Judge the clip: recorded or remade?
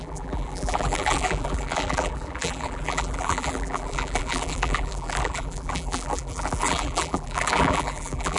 remade